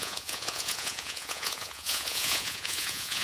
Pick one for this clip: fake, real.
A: fake